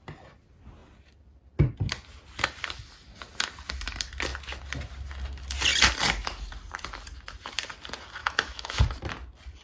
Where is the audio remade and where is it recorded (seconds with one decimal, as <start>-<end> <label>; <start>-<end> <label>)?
0.0-8.2 recorded; 8.2-8.8 remade; 8.8-9.6 recorded